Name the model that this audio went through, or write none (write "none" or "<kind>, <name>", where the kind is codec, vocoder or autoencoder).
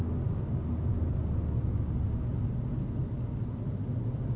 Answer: none